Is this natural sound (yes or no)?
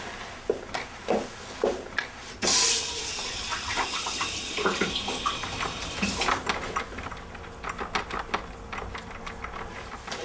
yes